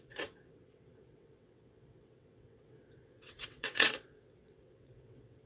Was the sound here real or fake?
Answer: fake